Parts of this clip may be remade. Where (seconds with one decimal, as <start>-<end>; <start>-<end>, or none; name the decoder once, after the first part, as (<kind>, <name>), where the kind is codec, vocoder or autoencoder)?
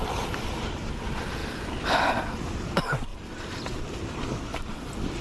none